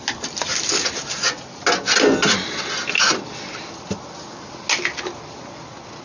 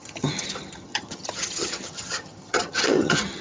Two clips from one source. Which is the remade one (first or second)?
second